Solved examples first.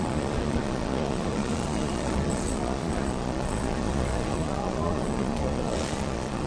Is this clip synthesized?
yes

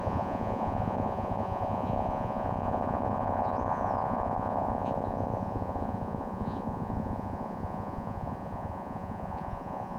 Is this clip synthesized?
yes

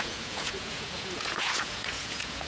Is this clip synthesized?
yes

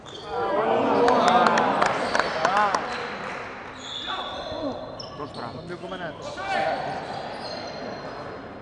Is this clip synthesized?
no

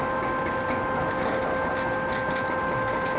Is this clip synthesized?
no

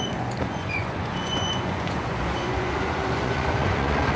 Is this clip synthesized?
yes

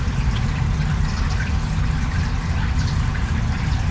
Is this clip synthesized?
no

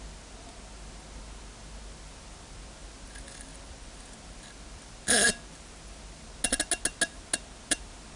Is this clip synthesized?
no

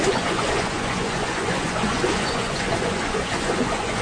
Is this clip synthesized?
yes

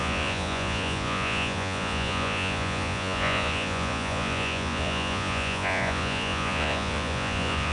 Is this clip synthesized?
yes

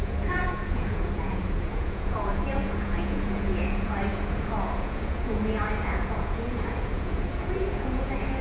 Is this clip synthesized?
yes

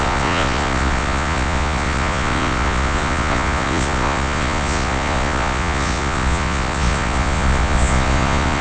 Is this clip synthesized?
yes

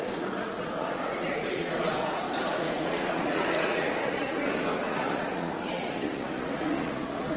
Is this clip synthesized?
yes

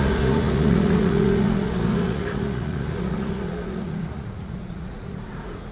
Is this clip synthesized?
yes